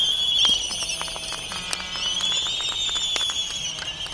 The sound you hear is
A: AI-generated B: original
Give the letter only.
B